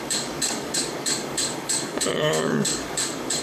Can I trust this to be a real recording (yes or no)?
no